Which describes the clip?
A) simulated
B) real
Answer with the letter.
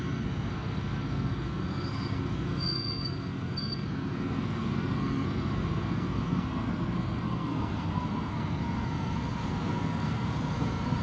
A